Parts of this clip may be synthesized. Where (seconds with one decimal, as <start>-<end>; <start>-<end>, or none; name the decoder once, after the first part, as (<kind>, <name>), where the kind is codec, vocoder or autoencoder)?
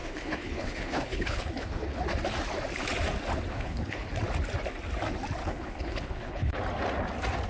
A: 0.0-2.0 (codec, HILCodec); 3.5-4.1; 5.4-6.6